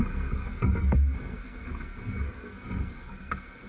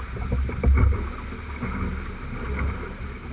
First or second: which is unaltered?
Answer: second